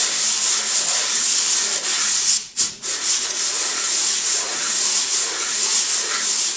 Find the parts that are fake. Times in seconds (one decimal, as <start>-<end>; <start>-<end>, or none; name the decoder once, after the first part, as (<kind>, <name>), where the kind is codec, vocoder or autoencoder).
1.9-5.9 (vocoder, Vocos)

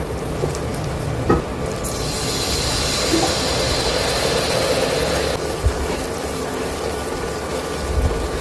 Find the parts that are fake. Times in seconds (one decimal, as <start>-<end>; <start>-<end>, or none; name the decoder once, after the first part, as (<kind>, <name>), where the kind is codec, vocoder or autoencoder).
none

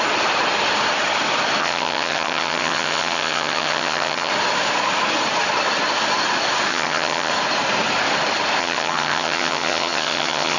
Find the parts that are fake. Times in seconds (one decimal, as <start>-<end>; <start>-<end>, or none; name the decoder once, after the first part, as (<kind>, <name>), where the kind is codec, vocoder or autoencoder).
1.6-4.3 (vocoder, HiFi-GAN); 6.7-7.3; 8.6-10.6

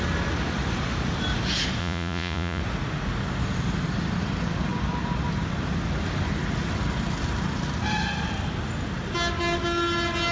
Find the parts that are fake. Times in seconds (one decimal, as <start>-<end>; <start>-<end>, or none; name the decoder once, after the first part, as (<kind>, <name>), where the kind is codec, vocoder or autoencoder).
1.8-2.6 (vocoder, Vocos)

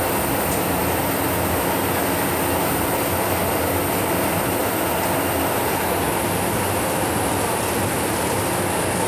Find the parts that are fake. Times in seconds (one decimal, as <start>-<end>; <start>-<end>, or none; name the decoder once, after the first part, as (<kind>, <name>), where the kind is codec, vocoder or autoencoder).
none

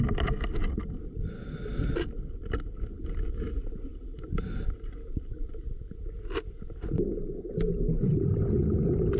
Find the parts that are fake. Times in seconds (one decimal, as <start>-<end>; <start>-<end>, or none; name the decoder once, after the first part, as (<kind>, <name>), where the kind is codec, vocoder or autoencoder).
none

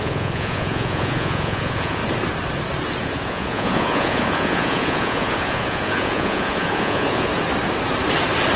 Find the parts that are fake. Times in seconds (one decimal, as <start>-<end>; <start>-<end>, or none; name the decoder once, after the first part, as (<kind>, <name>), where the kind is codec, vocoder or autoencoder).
0.0-2.0 (vocoder, Vocos); 3.0-7.3